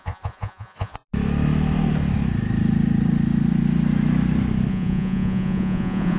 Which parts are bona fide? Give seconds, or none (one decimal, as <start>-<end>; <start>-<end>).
1.0-4.7